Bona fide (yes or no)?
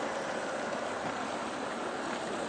yes